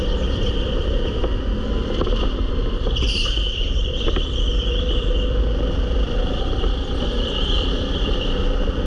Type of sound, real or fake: fake